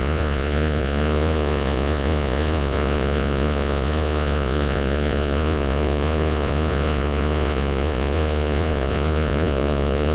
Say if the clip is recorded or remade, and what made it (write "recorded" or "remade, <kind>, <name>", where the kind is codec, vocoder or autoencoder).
remade, vocoder, Vocos